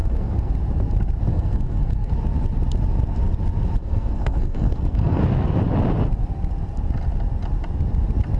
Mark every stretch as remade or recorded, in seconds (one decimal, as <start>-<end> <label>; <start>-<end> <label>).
0.0-0.5 remade; 0.5-1.3 recorded; 1.3-2.1 remade; 2.1-3.8 recorded; 3.8-5.2 remade; 5.2-8.4 recorded